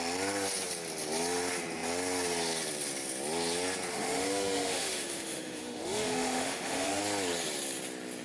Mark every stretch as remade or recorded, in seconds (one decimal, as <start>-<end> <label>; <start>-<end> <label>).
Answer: 0.0-3.9 recorded; 3.9-7.0 remade; 7.0-8.2 recorded